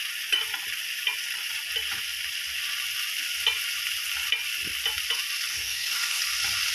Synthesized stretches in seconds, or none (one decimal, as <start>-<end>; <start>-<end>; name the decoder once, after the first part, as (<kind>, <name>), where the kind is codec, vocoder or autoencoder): 5.5-6.2 (codec, DAC)